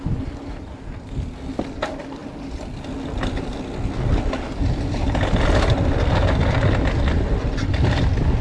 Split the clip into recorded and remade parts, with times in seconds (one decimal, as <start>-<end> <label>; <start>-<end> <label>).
0.0-8.4 recorded